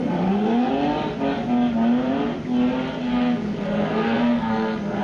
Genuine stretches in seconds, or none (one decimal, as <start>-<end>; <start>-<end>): 0.7-3.0